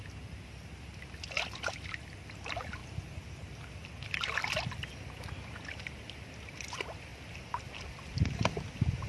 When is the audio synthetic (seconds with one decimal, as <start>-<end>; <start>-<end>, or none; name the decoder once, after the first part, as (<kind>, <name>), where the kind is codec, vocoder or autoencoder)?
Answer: none